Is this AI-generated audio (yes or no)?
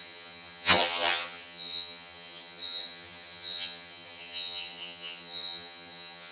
yes